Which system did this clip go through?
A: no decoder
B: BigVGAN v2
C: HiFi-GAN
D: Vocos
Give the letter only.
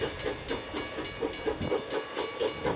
A